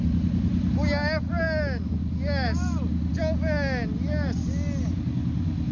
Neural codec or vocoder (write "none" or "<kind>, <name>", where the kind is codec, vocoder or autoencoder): none